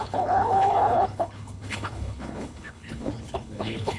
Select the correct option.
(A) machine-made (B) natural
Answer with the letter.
A